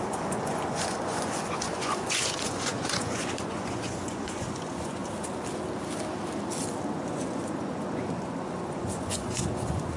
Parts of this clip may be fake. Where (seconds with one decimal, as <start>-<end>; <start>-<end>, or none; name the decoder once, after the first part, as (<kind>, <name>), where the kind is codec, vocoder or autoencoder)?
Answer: 0.0-5.0 (vocoder, Vocos); 6.9-10.0